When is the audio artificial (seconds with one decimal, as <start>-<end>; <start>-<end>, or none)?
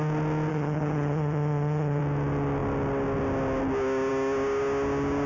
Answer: 0.5-2.0